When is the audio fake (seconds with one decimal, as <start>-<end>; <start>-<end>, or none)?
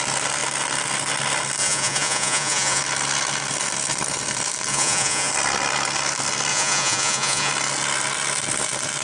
1.6-2.8; 4.7-5.3; 6.5-7.5